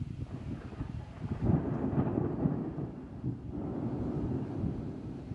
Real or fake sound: real